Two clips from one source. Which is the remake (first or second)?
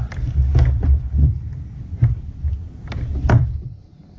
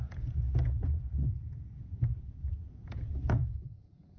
second